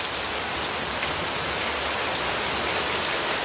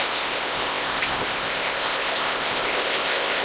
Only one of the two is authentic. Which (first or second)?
first